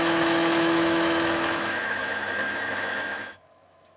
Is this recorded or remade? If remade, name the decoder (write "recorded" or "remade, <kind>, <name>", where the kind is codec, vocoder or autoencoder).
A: remade, autoencoder, DAC-VAE